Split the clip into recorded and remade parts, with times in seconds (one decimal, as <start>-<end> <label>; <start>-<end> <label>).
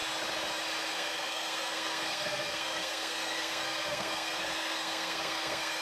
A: 0.0-0.9 recorded; 0.9-5.8 remade